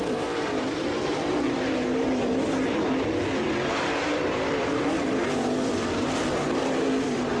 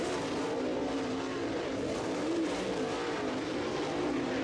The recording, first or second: second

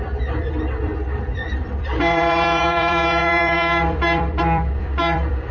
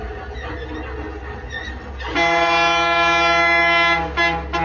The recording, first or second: second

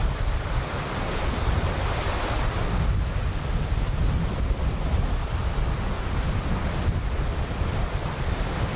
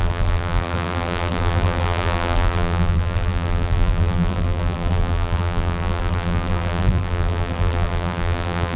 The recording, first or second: first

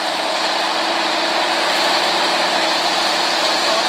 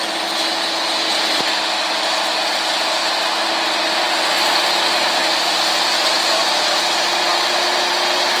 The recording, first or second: second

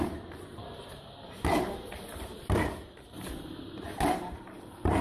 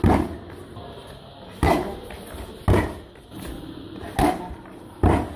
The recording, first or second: second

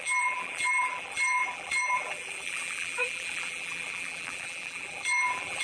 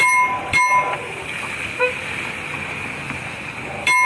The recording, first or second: second